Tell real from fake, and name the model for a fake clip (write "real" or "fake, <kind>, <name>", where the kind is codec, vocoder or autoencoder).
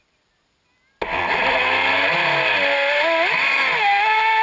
real